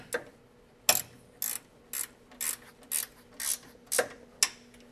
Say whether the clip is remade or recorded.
recorded